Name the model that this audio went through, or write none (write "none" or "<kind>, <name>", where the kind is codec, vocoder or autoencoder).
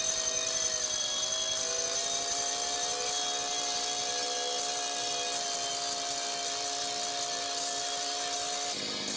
none